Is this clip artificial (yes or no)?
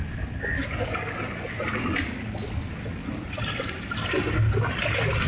no